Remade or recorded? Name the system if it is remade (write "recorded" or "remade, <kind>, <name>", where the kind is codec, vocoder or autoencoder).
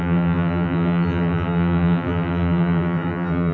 remade, vocoder, BigVGAN v2